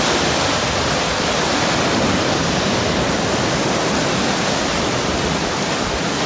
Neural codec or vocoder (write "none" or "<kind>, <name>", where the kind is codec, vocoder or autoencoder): none